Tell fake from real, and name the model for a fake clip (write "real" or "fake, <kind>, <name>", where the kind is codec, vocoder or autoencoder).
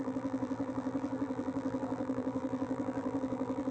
fake, vocoder, BigVGAN v2